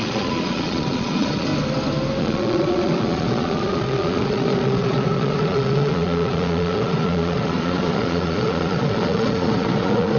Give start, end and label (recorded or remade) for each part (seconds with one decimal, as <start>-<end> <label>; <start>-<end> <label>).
0.0-1.5 remade; 1.5-2.2 recorded; 2.2-10.2 remade